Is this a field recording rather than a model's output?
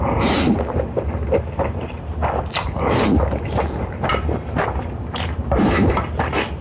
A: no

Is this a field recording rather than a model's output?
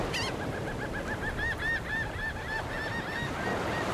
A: yes